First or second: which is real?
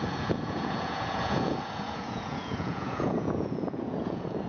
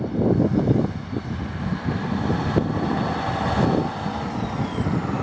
second